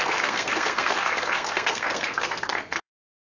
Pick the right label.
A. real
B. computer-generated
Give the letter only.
B